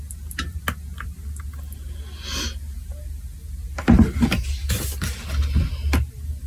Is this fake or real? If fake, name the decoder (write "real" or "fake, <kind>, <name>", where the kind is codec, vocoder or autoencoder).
real